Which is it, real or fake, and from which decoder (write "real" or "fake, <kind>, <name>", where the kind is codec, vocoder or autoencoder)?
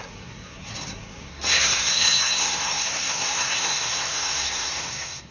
fake, codec, SNAC